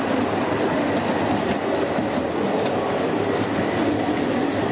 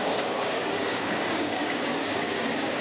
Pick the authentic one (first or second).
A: first